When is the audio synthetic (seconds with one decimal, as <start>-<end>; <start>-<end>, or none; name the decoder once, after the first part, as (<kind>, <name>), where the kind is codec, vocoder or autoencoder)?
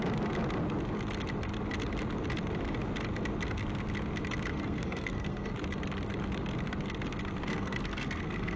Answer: 4.5-5.5 (codec, SNAC); 7.5-8.6